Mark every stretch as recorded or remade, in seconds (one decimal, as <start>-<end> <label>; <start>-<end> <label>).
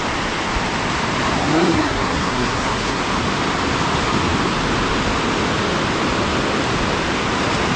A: 0.0-1.4 recorded; 1.4-3.0 remade; 3.0-7.8 recorded